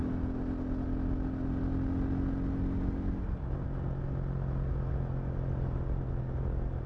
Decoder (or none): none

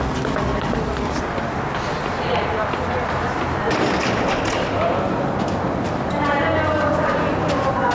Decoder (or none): none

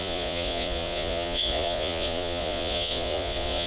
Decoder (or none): vocoder, Vocos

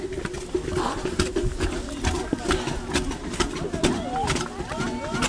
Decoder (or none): none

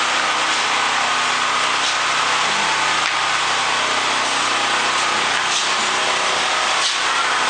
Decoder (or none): none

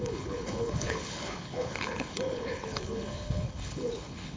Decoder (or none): codec, HILCodec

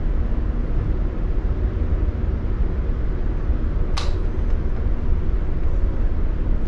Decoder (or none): none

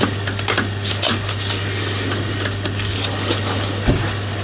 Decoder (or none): none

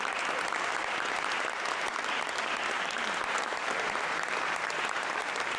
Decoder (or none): vocoder, BigVGAN v2